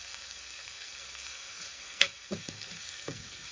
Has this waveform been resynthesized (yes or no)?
yes